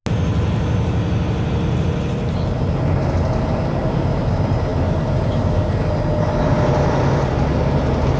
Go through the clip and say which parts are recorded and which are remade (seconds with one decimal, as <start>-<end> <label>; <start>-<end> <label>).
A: 0.0-8.2 recorded